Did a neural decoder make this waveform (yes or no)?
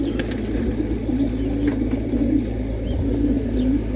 no